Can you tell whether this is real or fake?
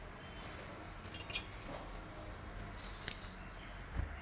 real